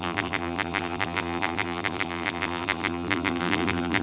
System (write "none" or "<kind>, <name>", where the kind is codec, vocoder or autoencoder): vocoder, BigVGAN v2